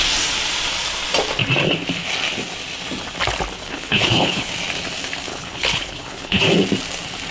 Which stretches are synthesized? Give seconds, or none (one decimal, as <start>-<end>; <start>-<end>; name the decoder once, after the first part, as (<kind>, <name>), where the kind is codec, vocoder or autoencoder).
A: 3.6-4.5 (codec, HILCodec); 5.3-6.4